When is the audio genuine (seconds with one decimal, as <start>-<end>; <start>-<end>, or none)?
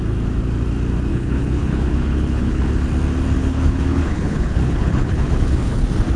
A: 0.0-1.1; 2.6-3.4; 5.8-6.2